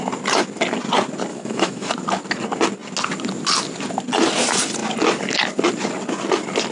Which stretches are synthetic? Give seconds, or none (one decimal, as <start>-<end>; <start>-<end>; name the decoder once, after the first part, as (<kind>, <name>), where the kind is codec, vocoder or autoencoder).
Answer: 1.3-1.9 (autoencoder, DAC-VAE)